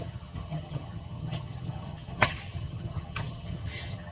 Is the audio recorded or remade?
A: remade